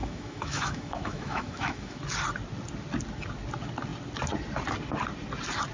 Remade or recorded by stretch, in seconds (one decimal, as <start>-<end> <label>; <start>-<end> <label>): 0.0-2.0 remade; 2.0-5.7 recorded

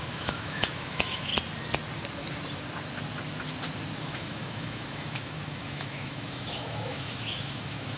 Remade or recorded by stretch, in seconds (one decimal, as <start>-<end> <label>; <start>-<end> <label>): 0.0-1.3 remade; 1.3-4.0 recorded; 4.0-8.0 remade

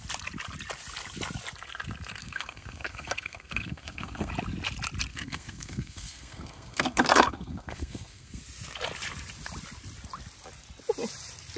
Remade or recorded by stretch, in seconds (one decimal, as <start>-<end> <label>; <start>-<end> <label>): 0.0-2.2 recorded; 2.2-4.3 remade; 4.3-5.1 recorded; 5.1-8.4 remade; 8.4-11.6 recorded

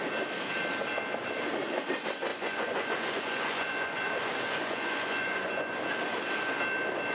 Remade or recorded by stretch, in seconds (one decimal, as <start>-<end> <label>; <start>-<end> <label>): 0.0-2.3 recorded; 2.3-5.8 remade; 5.8-7.1 recorded

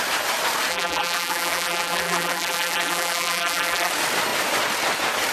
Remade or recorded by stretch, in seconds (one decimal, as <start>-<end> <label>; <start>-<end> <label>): 0.0-0.7 recorded; 0.7-3.9 remade; 3.9-5.3 recorded

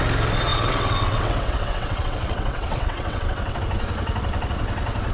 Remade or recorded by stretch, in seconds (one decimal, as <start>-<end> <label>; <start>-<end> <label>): 0.0-0.5 recorded; 0.5-3.6 remade; 3.6-5.1 recorded